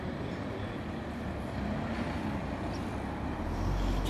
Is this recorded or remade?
recorded